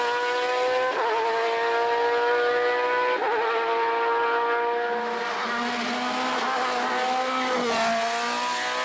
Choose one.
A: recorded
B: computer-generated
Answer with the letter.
A